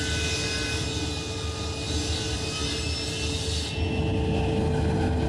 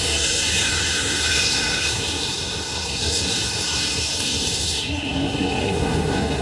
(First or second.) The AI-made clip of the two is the second